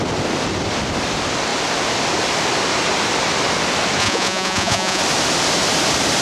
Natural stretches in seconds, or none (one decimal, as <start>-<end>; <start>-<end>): 0.0-4.0; 5.0-6.2